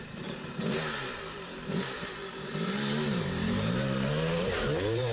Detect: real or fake fake